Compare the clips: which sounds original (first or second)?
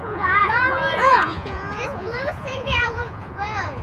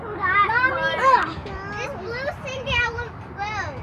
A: second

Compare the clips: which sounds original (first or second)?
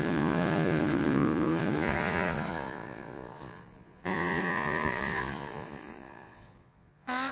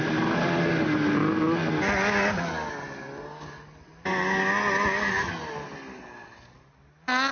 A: second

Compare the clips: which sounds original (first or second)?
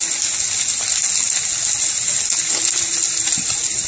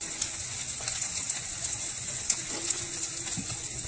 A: first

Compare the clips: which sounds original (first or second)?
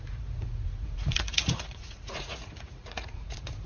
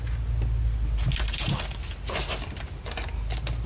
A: second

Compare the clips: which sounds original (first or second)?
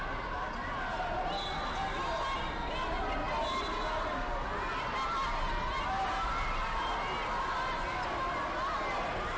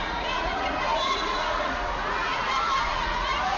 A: first